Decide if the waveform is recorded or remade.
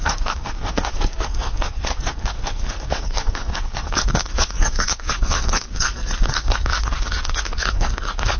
remade